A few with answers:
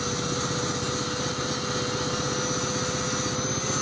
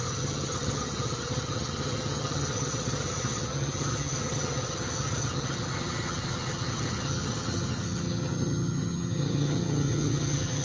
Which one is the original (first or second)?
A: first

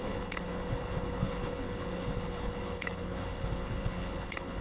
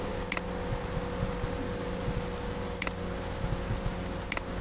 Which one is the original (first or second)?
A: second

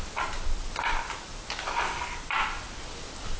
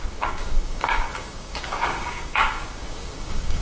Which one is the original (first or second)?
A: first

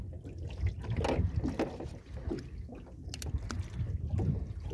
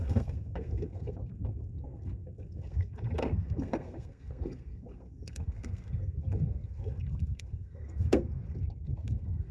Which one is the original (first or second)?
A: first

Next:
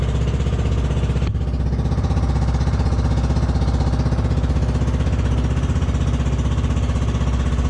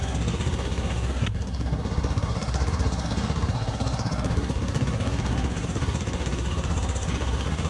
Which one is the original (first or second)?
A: first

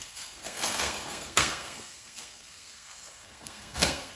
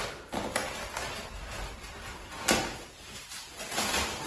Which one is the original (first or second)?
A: second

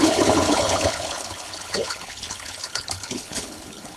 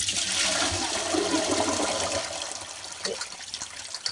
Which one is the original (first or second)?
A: second